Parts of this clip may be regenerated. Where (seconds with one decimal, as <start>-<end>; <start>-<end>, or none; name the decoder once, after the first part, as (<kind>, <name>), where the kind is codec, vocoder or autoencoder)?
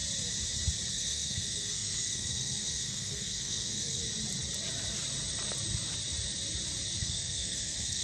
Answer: 0.9-4.0 (codec, SNAC); 7.0-8.0